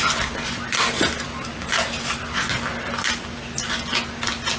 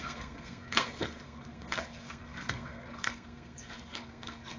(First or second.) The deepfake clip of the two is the second